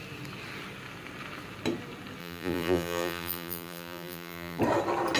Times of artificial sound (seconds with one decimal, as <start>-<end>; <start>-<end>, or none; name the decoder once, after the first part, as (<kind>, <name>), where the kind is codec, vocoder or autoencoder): 2.2-4.6 (vocoder, BigVGAN v2)